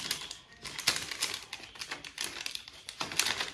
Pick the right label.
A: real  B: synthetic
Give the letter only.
A